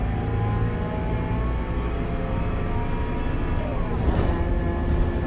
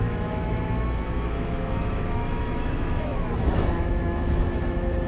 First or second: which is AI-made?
second